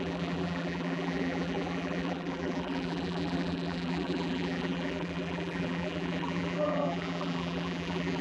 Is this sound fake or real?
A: fake